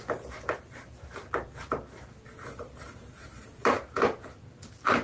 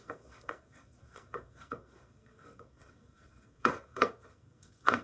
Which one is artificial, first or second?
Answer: second